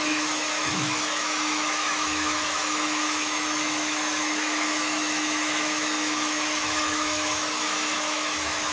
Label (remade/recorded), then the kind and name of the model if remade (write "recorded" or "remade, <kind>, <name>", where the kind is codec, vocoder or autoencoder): remade, autoencoder, DAC-VAE